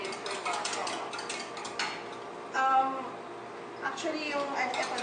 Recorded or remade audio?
recorded